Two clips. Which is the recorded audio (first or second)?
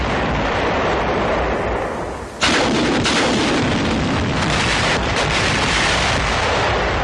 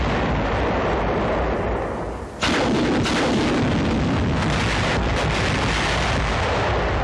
second